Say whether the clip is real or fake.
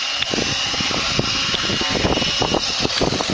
real